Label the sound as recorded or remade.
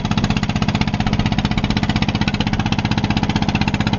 recorded